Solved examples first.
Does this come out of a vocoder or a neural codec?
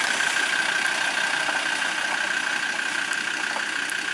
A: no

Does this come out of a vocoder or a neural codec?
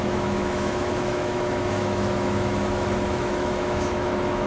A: yes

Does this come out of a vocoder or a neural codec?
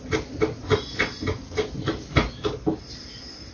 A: no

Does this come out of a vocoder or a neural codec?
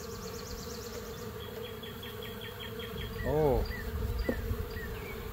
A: no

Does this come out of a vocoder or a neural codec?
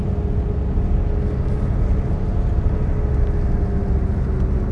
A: no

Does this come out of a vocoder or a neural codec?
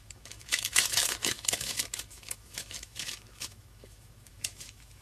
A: yes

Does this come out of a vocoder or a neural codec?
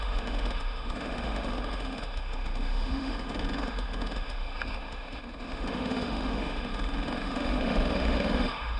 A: yes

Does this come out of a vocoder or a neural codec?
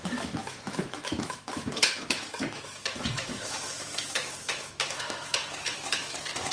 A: yes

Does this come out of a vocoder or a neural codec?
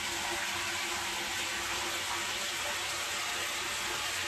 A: no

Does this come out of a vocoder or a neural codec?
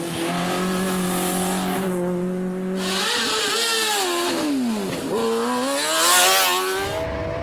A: no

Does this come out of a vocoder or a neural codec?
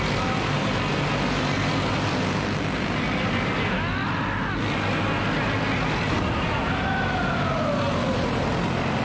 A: no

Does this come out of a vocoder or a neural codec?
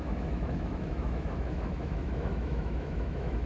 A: yes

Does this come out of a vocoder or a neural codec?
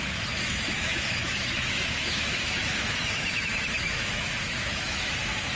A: yes